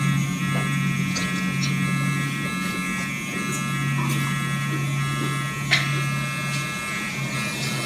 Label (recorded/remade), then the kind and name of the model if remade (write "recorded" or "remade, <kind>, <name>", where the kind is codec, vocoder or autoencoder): recorded